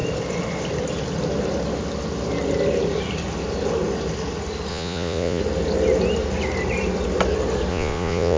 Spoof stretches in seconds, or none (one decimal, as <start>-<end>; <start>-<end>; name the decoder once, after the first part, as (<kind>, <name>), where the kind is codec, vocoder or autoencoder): 4.7-5.4 (vocoder, Vocos); 7.7-8.4